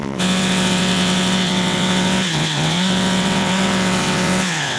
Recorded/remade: remade